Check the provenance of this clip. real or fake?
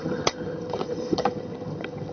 fake